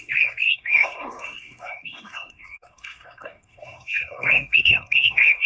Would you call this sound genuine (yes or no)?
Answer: no